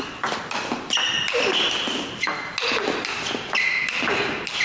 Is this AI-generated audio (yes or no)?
no